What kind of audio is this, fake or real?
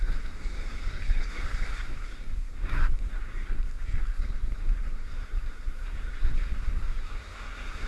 fake